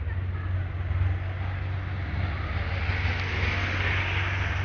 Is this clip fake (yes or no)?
no